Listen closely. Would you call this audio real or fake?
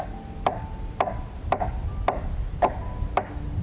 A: real